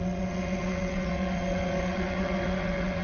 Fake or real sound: fake